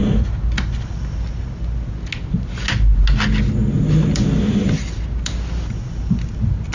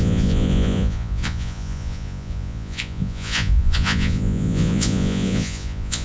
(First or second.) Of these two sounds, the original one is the first